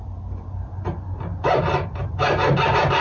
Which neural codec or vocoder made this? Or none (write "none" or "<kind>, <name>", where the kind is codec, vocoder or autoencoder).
none